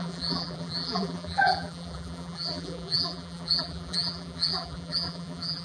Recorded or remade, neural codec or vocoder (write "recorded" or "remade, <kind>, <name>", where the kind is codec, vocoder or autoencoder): remade, vocoder, BigVGAN v2